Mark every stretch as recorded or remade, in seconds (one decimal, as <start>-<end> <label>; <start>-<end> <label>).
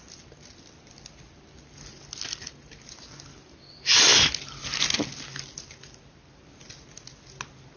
0.0-7.8 recorded